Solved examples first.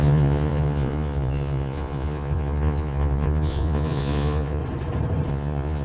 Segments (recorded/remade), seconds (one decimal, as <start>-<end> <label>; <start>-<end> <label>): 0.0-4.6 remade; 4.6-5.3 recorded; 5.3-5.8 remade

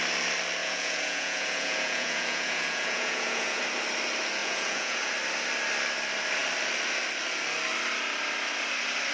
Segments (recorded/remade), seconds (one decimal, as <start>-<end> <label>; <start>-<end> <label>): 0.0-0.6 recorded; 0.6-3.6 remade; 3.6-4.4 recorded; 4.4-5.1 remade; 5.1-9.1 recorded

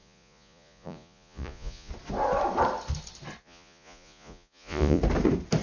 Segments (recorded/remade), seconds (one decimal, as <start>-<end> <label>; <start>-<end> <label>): 0.0-1.9 remade; 1.9-3.4 recorded; 3.4-5.0 remade; 5.0-5.6 recorded